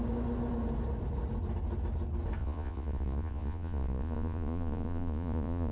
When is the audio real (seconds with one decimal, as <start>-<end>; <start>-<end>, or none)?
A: 0.0-2.4